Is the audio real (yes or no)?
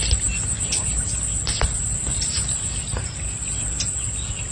yes